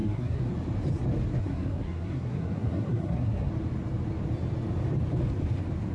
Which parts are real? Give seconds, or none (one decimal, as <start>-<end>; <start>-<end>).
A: 0.5-1.4; 3.5-5.9